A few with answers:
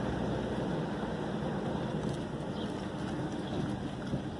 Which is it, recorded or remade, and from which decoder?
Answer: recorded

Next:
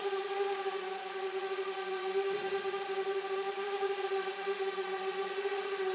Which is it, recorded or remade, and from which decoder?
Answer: remade, vocoder, Vocos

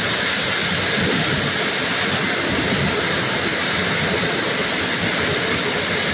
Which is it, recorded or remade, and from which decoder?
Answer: recorded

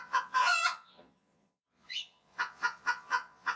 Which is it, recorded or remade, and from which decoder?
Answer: remade, vocoder, Vocos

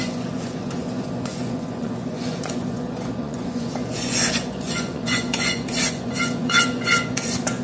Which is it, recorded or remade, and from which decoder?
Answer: remade, vocoder, Vocos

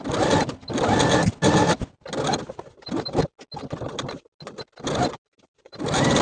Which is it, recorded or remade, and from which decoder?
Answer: recorded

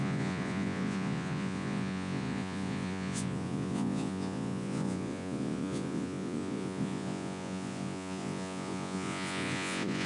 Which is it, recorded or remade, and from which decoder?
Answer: remade, vocoder, Vocos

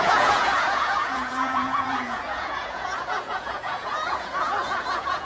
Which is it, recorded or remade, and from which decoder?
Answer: remade, vocoder, Vocos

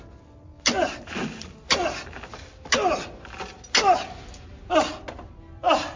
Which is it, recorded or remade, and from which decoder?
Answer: recorded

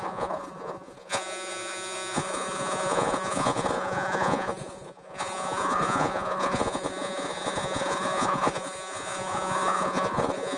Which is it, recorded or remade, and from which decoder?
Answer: remade, vocoder, Vocos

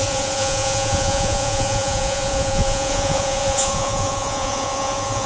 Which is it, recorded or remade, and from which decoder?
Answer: remade, vocoder, Vocos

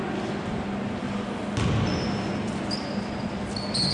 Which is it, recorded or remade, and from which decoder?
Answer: recorded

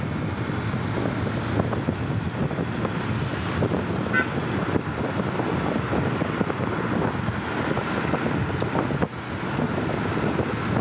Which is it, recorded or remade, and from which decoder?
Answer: recorded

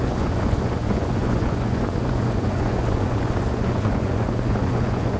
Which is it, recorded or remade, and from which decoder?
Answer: remade, vocoder, Vocos